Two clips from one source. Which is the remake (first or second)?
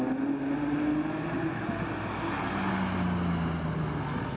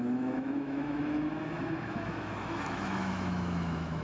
second